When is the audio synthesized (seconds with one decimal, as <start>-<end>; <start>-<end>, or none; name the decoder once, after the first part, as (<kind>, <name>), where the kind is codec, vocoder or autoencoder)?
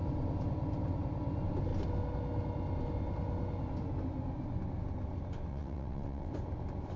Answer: 5.5-6.3 (vocoder, WaveNeXt)